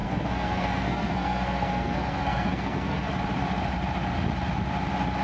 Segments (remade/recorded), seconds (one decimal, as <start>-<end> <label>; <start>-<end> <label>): 0.0-3.1 remade; 3.1-5.2 recorded